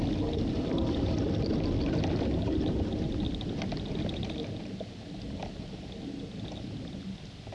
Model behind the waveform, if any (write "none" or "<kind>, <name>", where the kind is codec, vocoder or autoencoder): none